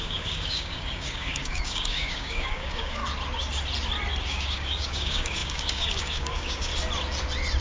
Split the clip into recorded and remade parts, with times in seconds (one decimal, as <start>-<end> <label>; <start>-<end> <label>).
0.0-3.0 remade; 3.0-4.2 recorded; 4.2-6.7 remade; 6.7-7.6 recorded